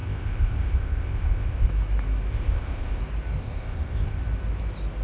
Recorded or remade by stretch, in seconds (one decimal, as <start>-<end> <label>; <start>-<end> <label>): 0.0-1.7 remade; 1.7-2.3 recorded; 2.3-3.0 remade; 3.0-3.4 recorded; 3.4-4.2 remade; 4.2-5.0 recorded